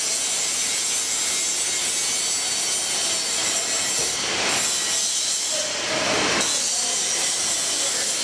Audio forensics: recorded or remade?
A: recorded